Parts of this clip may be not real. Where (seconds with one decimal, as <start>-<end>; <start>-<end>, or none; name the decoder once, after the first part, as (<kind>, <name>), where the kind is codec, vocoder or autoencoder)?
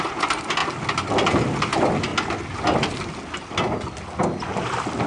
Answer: none